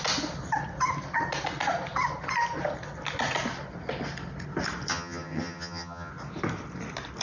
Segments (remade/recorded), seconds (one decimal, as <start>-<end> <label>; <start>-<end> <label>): 0.0-4.9 recorded; 4.9-6.1 remade; 6.1-7.2 recorded